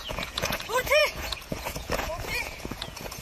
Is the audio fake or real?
fake